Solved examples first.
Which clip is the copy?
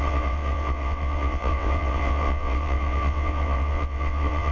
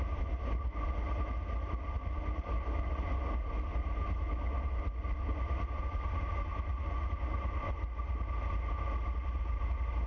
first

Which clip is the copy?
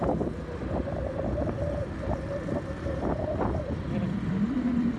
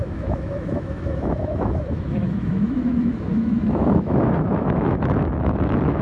second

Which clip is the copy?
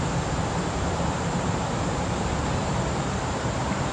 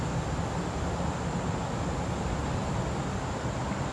first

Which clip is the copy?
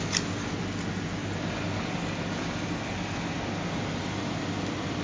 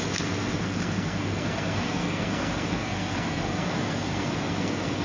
second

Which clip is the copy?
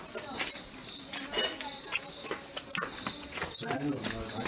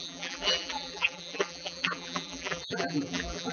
second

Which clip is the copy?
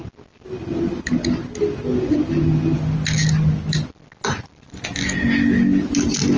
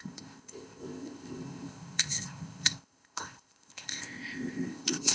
second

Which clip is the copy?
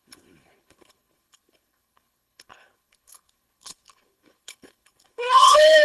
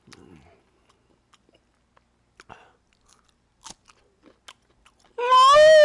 first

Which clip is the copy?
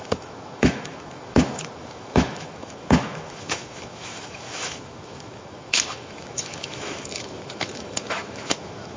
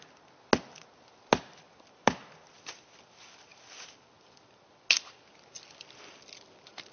first